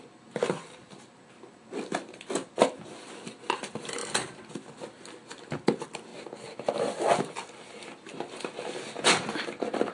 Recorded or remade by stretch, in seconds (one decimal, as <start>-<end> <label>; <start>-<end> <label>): 0.0-9.9 recorded